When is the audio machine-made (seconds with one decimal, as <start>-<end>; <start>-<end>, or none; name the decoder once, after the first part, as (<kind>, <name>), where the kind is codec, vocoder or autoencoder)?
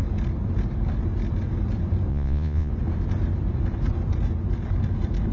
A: 2.1-2.7 (vocoder, Vocos)